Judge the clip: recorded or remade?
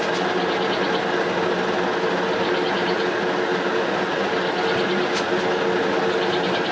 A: recorded